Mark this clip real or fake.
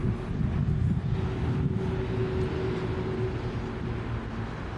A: real